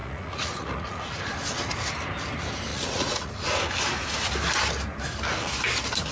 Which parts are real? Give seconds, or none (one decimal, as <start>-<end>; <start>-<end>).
1.2-2.7; 3.3-6.1